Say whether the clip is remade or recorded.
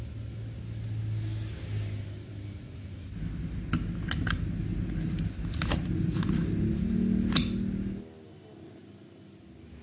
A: recorded